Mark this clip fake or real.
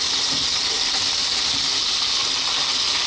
real